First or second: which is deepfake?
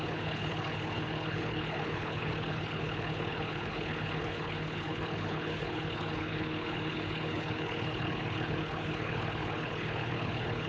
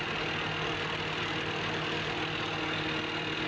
first